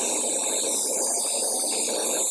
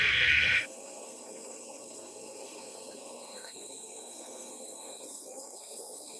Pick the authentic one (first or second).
first